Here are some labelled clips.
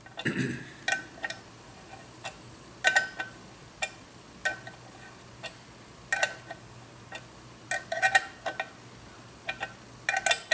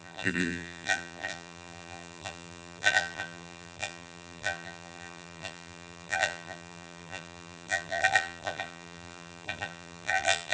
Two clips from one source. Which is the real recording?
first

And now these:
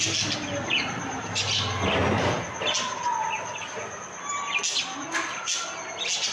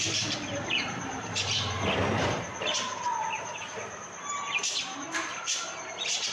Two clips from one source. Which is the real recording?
first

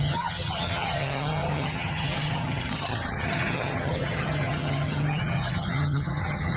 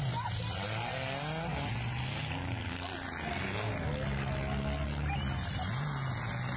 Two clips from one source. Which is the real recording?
second